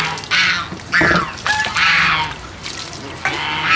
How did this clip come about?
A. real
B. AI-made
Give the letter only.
A